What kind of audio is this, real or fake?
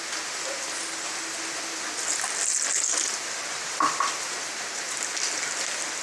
real